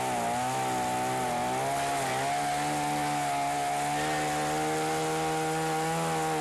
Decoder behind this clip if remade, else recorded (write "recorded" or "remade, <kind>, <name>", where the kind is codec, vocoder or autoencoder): recorded